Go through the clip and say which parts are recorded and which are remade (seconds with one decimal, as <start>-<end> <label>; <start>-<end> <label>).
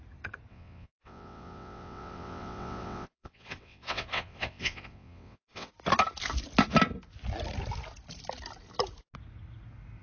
0.0-0.5 recorded; 0.5-5.7 remade; 5.7-10.0 recorded